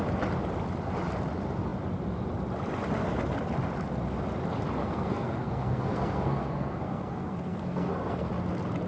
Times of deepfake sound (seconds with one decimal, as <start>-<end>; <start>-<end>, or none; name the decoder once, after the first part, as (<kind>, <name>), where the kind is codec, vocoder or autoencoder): 4.8-8.3 (codec, SNAC)